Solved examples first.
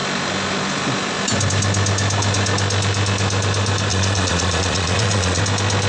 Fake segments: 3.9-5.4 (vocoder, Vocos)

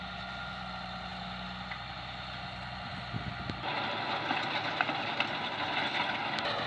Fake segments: none